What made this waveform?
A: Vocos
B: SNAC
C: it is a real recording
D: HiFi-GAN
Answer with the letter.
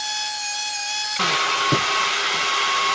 C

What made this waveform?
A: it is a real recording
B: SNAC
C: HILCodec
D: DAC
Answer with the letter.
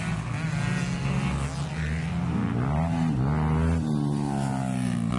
A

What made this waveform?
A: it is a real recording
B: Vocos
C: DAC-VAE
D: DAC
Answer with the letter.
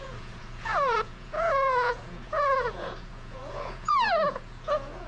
B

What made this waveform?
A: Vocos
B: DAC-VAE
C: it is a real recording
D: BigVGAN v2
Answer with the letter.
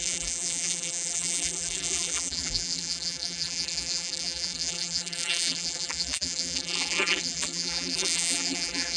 D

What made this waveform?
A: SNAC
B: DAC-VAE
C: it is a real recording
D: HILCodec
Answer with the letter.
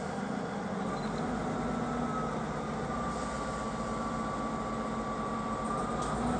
C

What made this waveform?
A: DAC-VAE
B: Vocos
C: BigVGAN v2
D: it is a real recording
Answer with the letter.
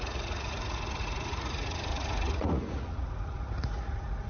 B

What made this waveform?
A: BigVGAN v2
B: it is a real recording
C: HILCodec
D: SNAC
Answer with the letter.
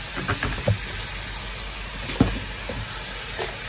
B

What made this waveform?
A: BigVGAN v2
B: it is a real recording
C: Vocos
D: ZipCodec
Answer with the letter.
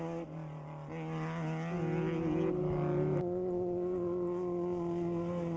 B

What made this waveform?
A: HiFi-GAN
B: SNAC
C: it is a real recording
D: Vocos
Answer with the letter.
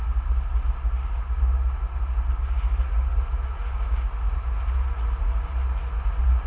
C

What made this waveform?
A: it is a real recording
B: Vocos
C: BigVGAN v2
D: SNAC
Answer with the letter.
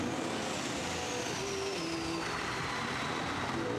A